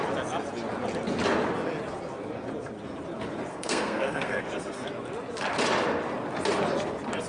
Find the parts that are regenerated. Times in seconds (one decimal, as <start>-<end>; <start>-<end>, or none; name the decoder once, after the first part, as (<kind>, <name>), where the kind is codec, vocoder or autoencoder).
3.5-4.4 (codec, SNAC)